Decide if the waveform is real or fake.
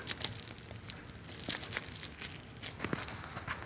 real